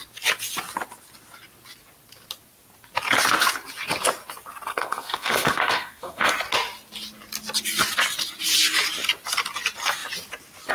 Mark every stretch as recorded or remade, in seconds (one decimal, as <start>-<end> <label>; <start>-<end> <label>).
0.0-4.7 recorded; 4.7-6.3 remade; 6.3-10.7 recorded

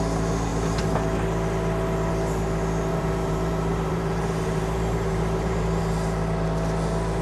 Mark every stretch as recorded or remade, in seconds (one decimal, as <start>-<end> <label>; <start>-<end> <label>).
0.0-2.9 recorded; 2.9-5.8 remade; 5.8-7.2 recorded

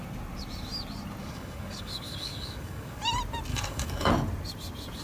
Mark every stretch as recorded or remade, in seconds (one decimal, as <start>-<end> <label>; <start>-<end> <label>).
0.0-1.2 recorded; 1.2-3.0 remade; 3.0-3.5 recorded; 3.5-4.1 remade; 4.1-5.0 recorded